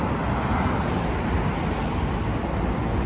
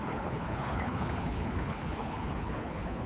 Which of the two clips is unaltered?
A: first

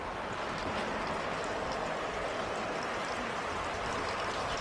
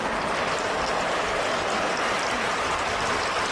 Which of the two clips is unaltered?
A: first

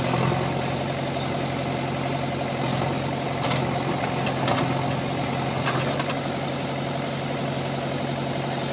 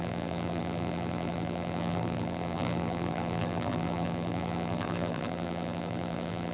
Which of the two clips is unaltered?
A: first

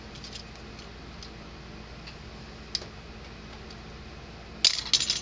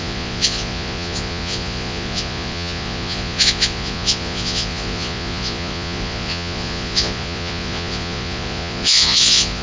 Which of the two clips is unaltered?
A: first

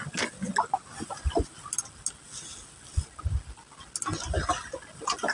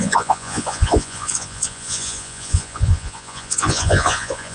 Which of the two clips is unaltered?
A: first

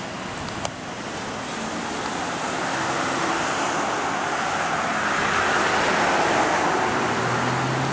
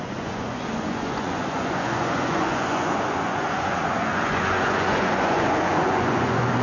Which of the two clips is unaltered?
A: first